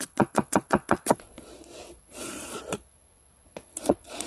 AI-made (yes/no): yes